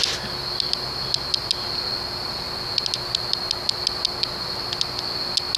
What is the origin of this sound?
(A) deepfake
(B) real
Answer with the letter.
B